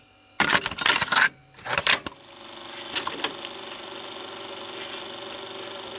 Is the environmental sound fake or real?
real